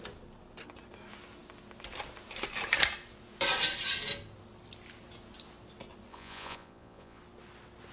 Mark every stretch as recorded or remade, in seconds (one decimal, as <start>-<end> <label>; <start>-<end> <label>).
0.0-6.1 recorded; 6.1-7.2 remade; 7.2-7.9 recorded